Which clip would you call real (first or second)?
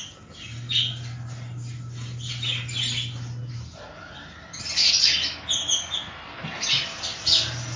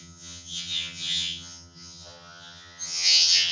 first